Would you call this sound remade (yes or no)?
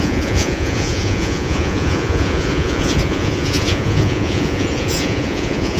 yes